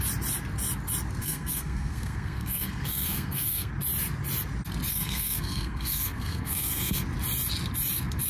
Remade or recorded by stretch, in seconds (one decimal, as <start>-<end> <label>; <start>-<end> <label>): 0.0-1.2 recorded; 1.2-3.7 remade; 3.7-4.9 recorded; 4.9-7.0 remade; 7.0-8.3 recorded